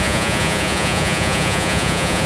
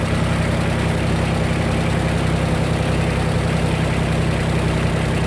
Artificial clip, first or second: first